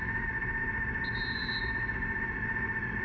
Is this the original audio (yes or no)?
yes